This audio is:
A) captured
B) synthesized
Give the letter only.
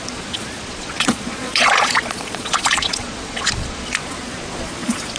B